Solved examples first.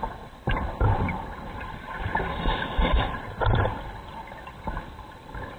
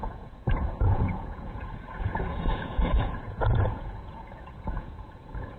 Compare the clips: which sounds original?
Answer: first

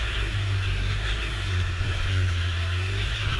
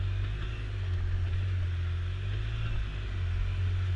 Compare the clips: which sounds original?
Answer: second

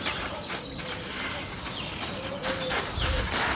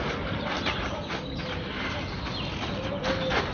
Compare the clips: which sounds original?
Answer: second